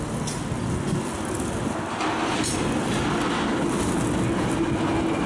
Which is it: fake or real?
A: real